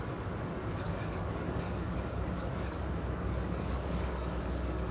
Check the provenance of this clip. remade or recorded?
remade